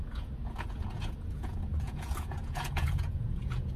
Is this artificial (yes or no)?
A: yes